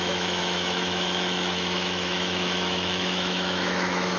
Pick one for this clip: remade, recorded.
remade